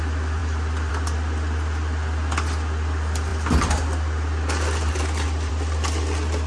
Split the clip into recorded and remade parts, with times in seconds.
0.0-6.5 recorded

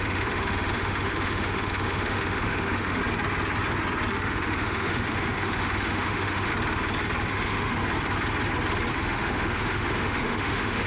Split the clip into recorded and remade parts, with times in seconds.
0.0-3.0 remade; 3.0-4.1 recorded; 4.1-6.5 remade; 6.5-7.3 recorded; 7.3-7.8 remade; 7.8-8.9 recorded; 8.9-10.9 remade

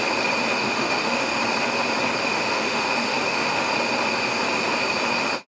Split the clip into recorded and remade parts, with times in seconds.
0.0-0.6 recorded; 0.6-1.4 remade; 1.4-2.2 recorded; 2.2-3.6 remade; 3.6-5.5 recorded

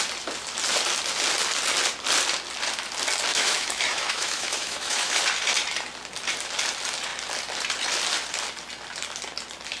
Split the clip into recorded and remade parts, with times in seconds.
0.0-3.3 recorded; 3.3-5.2 remade; 5.2-9.8 recorded

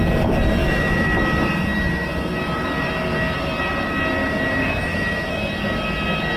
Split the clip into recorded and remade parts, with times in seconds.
0.0-0.6 recorded; 0.6-1.2 remade; 1.2-4.2 recorded; 4.2-5.5 remade; 5.5-6.4 recorded

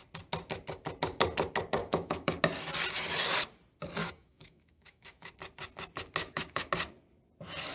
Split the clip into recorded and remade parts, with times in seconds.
0.0-1.8 recorded; 1.8-2.4 remade; 2.4-4.0 recorded; 4.0-5.3 remade; 5.3-6.2 recorded; 6.2-6.7 remade; 6.7-7.7 recorded

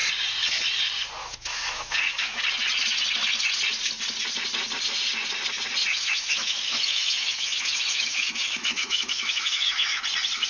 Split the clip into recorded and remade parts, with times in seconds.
0.0-1.2 recorded; 1.2-2.4 remade; 2.4-5.9 recorded; 5.9-10.0 remade; 10.0-10.5 recorded